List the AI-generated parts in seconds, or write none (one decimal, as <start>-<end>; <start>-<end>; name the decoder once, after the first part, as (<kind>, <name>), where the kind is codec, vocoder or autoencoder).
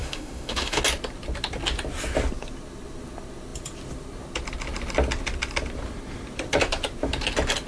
0.0-0.8 (autoencoder, DAC-VAE)